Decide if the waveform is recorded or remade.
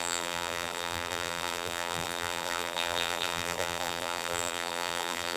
remade